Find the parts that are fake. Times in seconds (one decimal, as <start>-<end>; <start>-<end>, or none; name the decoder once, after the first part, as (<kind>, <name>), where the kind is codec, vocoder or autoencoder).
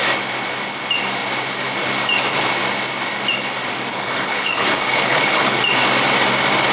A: 3.9-5.6 (codec, HILCodec)